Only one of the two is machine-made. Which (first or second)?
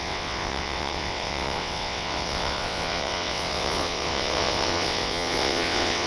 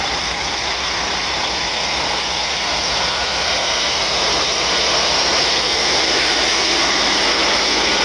first